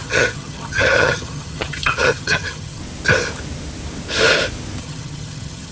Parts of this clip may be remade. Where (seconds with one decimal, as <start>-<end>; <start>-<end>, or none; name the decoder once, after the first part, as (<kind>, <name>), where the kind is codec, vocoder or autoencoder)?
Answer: 0.0-2.8 (vocoder, HiFi-GAN); 4.8-5.7